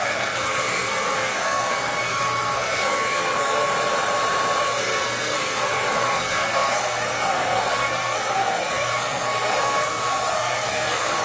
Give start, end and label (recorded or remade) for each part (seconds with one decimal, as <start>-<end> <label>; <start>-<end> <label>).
0.0-3.7 remade; 3.7-4.6 recorded; 4.6-11.2 remade